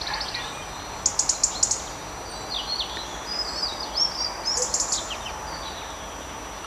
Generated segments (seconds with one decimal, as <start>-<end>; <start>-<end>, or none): none